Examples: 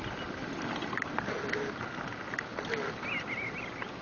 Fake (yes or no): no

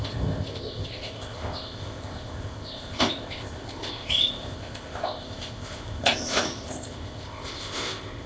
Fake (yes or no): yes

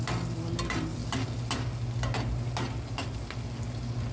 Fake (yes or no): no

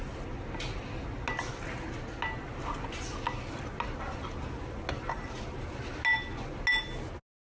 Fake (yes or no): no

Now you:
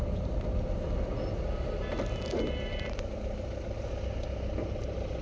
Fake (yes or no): no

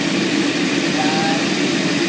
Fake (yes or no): no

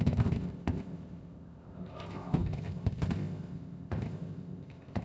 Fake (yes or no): yes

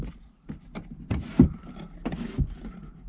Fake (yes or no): no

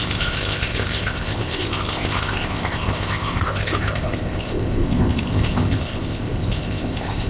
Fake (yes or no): yes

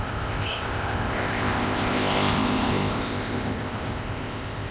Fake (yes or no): yes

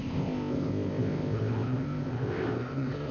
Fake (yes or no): yes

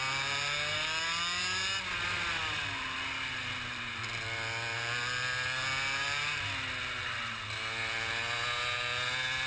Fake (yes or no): no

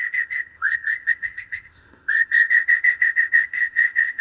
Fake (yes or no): yes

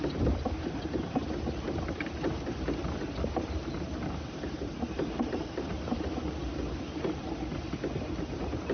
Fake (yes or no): no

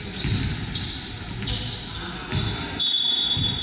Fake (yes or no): no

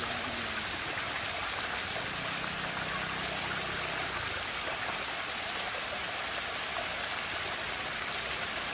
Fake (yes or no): no